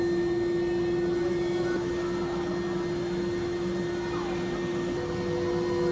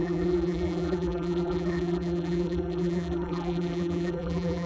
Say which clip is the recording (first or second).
first